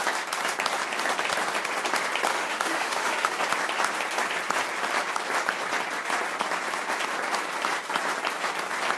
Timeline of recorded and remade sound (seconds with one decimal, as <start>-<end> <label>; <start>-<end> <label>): 0.0-2.3 recorded; 2.3-3.4 remade; 3.4-9.0 recorded